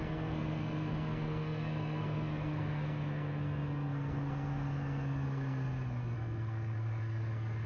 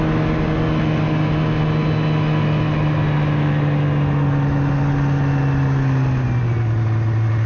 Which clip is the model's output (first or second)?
first